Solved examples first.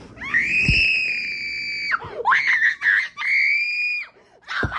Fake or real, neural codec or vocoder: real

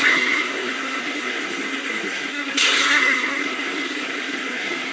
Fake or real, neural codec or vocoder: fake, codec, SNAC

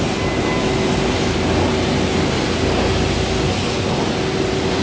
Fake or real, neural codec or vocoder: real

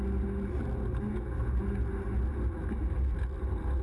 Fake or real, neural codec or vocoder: real